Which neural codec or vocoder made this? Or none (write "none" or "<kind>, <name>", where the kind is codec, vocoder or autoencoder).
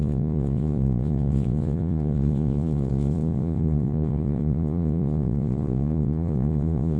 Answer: vocoder, Vocos